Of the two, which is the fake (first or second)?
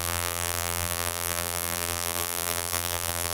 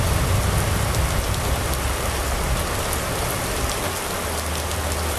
first